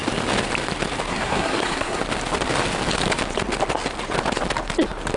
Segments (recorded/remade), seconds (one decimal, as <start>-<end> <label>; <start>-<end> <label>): 0.0-1.1 recorded; 1.1-2.0 remade; 2.0-5.2 recorded